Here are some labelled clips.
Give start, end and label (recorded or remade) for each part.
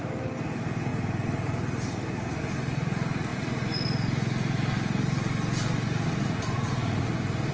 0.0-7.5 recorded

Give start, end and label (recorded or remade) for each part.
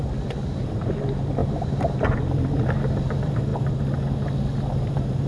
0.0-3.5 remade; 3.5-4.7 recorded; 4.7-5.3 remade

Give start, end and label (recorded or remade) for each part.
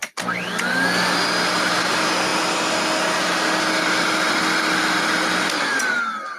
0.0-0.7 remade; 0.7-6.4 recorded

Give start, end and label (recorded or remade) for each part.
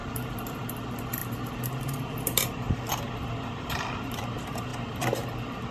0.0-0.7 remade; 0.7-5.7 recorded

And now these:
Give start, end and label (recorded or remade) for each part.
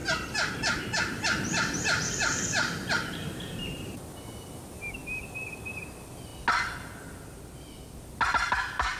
0.0-4.1 remade; 4.1-9.0 recorded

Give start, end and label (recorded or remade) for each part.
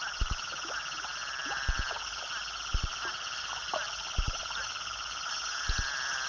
0.0-1.1 recorded; 1.1-2.2 remade; 2.2-3.7 recorded; 3.7-5.3 remade; 5.3-6.3 recorded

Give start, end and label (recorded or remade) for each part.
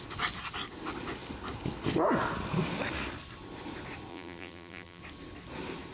0.0-4.1 recorded; 4.1-5.0 remade; 5.0-5.9 recorded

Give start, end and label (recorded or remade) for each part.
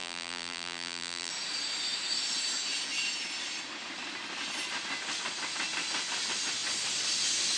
0.0-1.3 remade; 1.3-7.6 recorded